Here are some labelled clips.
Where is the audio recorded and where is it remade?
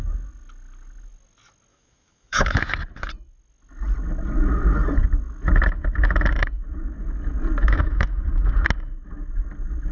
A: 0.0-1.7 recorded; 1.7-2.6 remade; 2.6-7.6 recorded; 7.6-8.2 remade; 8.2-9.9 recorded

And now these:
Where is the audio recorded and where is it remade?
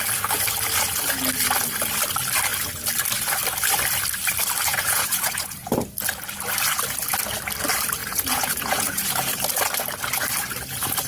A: 0.0-4.7 recorded; 4.7-5.7 remade; 5.7-8.0 recorded; 8.0-9.1 remade; 9.1-11.1 recorded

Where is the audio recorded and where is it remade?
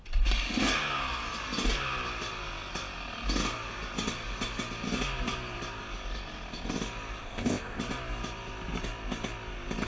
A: 0.0-7.2 recorded; 7.2-7.8 remade; 7.8-9.9 recorded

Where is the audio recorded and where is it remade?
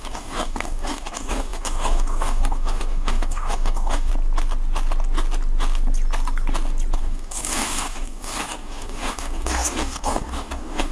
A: 0.0-4.1 remade; 4.1-7.0 recorded; 7.0-10.9 remade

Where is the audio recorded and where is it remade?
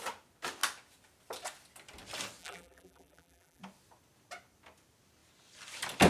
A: 0.0-2.4 recorded; 2.4-3.6 remade; 3.6-6.1 recorded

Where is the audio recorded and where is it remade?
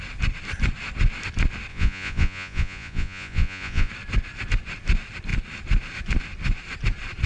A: 0.0-1.7 recorded; 1.7-3.9 remade; 3.9-7.3 recorded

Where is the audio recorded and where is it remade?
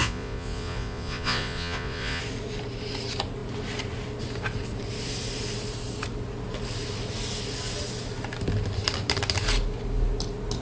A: 0.0-2.2 remade; 2.2-10.6 recorded